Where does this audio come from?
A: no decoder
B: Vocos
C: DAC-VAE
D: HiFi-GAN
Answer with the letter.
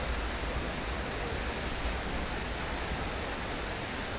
A